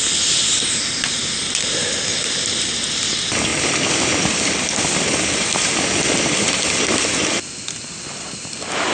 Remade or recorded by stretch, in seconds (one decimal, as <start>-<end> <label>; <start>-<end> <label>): 0.0-8.9 recorded